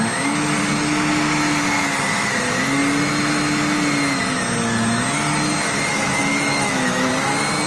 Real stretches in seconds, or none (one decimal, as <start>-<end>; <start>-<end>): 0.0-5.9; 7.1-7.7